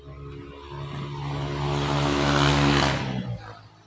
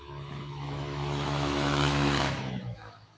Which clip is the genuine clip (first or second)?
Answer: first